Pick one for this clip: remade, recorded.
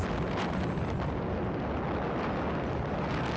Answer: recorded